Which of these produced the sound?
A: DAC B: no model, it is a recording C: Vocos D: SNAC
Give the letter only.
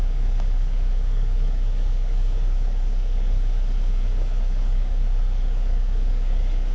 A